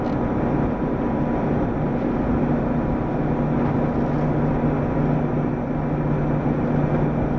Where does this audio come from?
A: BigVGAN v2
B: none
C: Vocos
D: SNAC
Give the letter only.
B